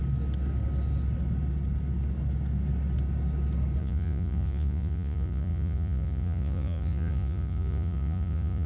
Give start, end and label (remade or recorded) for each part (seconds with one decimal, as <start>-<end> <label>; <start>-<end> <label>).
0.0-3.8 recorded; 3.8-8.7 remade